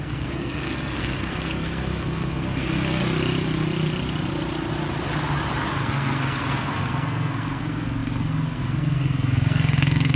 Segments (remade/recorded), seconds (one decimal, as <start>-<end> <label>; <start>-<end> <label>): 0.0-3.0 remade; 3.0-5.8 recorded; 5.8-10.2 remade